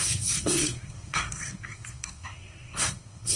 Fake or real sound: fake